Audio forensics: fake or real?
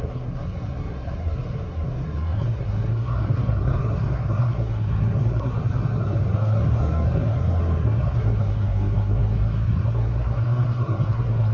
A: fake